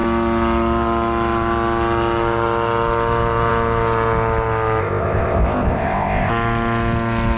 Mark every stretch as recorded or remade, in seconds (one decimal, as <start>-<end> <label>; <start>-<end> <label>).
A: 0.0-4.8 recorded; 4.8-6.3 remade; 6.3-7.4 recorded